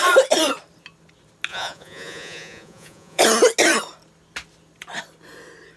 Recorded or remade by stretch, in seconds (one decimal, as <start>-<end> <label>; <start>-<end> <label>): 0.0-1.5 recorded; 1.5-3.2 remade; 3.2-5.8 recorded